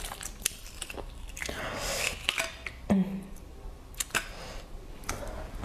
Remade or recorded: recorded